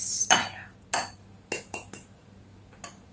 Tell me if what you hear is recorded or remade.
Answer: recorded